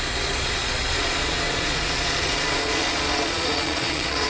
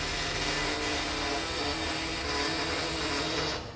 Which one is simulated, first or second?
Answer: first